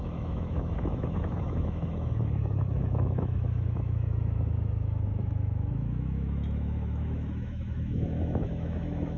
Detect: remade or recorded remade